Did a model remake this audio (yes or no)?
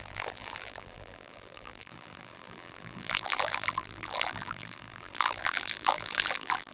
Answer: yes